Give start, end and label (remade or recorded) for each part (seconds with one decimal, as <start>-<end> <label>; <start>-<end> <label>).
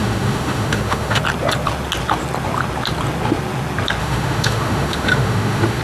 0.0-1.2 remade; 1.2-4.0 recorded; 4.0-5.8 remade